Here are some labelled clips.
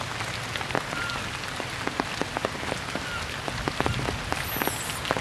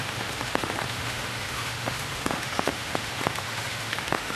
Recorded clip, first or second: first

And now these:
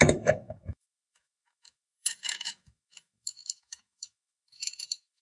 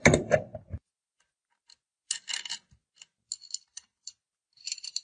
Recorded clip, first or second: second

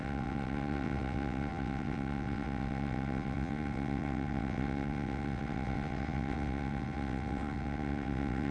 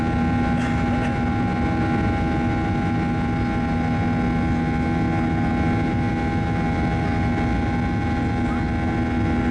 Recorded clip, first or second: second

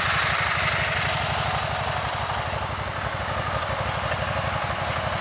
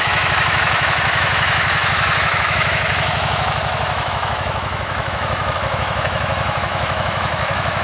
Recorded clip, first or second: first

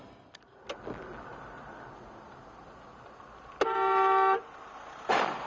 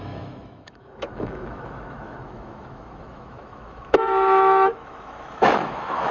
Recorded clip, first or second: first